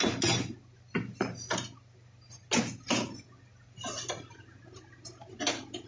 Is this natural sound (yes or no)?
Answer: yes